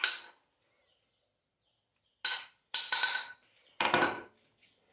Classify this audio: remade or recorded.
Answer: recorded